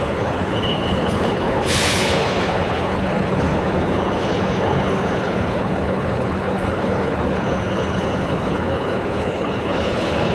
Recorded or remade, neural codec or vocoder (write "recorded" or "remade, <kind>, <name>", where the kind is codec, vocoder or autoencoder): remade, codec, HILCodec